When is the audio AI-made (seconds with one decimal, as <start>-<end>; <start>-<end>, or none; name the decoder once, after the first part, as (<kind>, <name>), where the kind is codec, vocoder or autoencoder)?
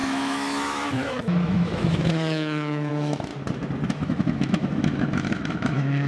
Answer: 0.0-3.3 (autoencoder, DAC-VAE); 3.9-6.1